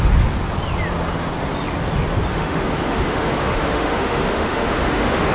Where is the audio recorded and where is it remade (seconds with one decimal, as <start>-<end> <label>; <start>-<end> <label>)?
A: 0.0-2.3 recorded; 2.3-5.3 remade